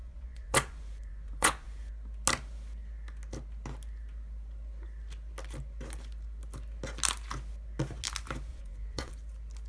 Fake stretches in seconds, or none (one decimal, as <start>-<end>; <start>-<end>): 0.0-1.9; 8.5-9.1